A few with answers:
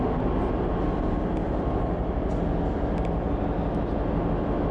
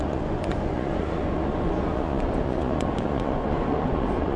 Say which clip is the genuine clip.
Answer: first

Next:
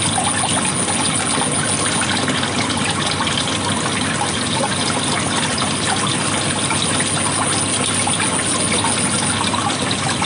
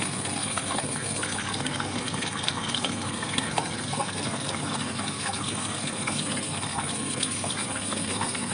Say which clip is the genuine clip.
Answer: first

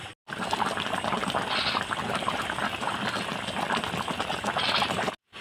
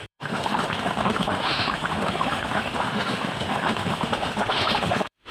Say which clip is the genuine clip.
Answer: first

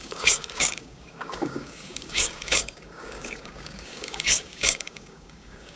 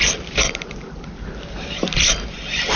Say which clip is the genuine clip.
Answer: second